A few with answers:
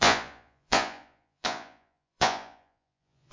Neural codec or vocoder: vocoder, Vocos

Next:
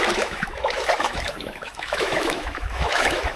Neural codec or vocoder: autoencoder, DAC-VAE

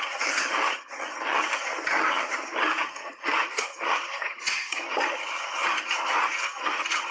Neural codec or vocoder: vocoder, HiFi-GAN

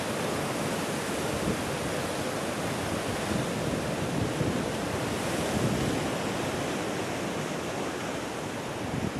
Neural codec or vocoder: none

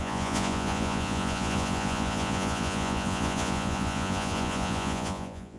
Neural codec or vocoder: vocoder, Vocos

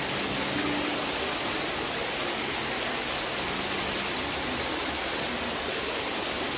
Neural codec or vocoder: none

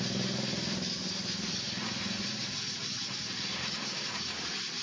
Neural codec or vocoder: none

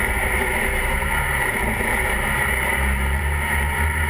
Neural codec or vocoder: vocoder, BigVGAN v2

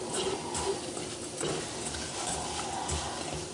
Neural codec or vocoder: none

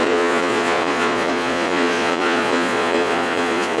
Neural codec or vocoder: vocoder, Vocos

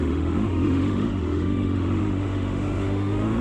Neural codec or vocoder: autoencoder, DAC-VAE